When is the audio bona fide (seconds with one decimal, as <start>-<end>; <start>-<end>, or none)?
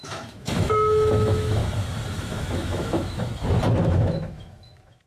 1.6-2.2; 3.3-3.8